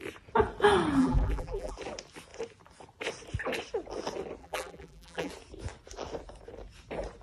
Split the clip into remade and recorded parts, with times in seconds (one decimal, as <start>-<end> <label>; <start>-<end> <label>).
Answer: 0.0-1.0 recorded; 1.0-1.7 remade; 1.7-4.4 recorded; 4.4-5.3 remade; 5.3-7.2 recorded

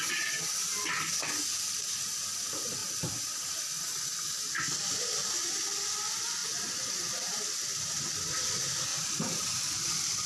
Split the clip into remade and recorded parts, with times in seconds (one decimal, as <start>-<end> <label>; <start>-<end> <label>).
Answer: 0.0-2.8 recorded; 2.8-3.6 remade; 3.6-6.4 recorded; 6.4-7.4 remade; 7.4-8.9 recorded; 8.9-10.3 remade

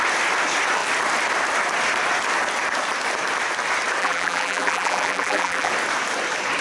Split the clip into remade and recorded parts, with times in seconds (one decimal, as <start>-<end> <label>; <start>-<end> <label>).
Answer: 0.0-4.0 recorded; 4.0-5.7 remade; 5.7-6.6 recorded

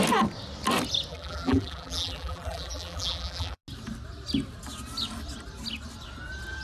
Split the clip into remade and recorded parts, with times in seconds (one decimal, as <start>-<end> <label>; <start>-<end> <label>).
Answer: 0.0-1.1 recorded; 1.1-3.6 remade; 3.6-6.6 recorded